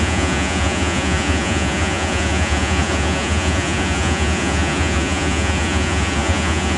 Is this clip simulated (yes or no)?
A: yes